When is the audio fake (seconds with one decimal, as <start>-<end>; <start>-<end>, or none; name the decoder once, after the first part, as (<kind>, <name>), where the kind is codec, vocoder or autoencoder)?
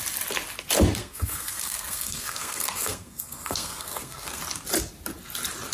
1.0-4.4 (codec, SNAC)